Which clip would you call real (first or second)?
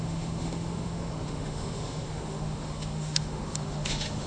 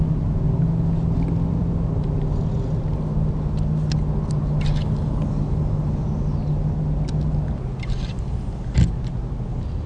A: second